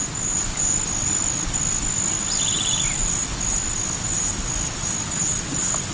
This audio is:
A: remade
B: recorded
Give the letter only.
B